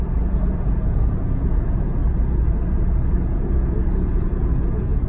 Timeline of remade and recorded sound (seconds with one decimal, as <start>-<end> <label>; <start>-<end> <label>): 0.0-2.0 remade; 2.0-2.7 recorded; 2.7-5.1 remade